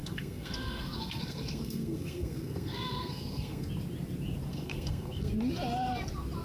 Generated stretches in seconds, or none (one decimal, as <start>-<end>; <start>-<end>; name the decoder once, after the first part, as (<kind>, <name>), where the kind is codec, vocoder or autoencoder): 0.0-3.7 (codec, SNAC); 4.5-5.3